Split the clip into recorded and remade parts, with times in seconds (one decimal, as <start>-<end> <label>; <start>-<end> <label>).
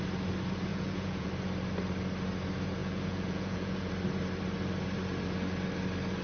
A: 0.0-0.7 recorded; 0.7-1.3 remade; 1.3-2.8 recorded; 2.8-3.9 remade; 3.9-6.2 recorded